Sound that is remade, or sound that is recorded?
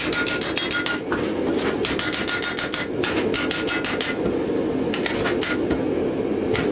recorded